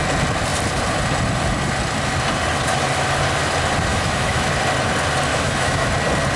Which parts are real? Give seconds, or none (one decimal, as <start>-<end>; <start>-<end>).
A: 0.0-3.9; 4.5-5.3; 5.9-6.4